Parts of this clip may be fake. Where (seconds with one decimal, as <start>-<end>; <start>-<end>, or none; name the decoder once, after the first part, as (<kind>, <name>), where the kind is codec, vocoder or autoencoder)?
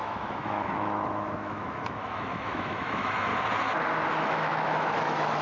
0.0-3.3 (autoencoder, DAC-VAE); 4.1-5.4